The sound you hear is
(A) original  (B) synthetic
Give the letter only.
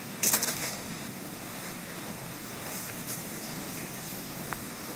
B